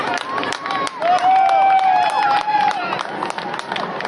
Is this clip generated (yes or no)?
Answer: no